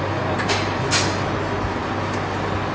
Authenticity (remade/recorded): recorded